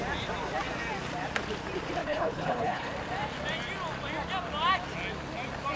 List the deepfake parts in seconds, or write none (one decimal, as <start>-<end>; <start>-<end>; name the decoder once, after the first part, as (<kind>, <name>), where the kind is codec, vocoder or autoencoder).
2.0-2.9 (codec, HILCodec)

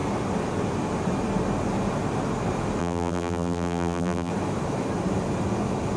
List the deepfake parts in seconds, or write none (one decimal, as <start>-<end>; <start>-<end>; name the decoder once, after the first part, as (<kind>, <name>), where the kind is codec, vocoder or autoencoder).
2.8-4.3 (vocoder, BigVGAN v2)

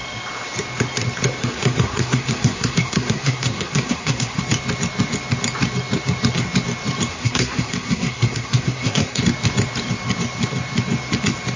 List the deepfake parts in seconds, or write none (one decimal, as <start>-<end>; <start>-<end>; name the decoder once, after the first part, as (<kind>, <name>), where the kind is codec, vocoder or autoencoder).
1.4-4.4 (codec, SNAC); 7.1-9.2

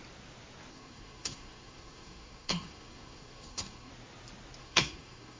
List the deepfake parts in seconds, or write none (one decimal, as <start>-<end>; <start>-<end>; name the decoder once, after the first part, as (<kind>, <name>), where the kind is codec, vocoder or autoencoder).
0.7-3.9 (codec, SNAC); 4.6-5.4

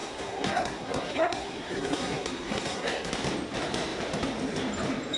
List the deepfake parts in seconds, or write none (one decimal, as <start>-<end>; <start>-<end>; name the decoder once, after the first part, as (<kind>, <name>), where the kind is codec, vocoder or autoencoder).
0.0-3.1 (codec, SNAC)

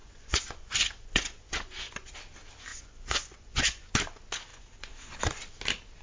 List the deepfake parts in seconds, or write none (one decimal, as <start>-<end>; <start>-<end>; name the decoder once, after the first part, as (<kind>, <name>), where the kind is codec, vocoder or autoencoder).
0.0-2.1 (vocoder, Vocos); 2.7-3.9; 4.5-5.4

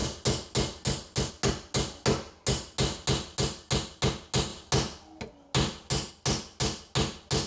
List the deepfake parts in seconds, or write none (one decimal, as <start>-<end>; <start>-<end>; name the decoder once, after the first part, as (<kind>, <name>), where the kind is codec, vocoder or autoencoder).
none